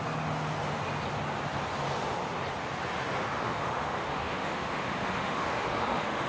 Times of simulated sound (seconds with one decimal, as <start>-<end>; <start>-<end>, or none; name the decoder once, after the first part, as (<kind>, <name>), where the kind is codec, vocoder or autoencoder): 3.3-6.3 (autoencoder, DAC-VAE)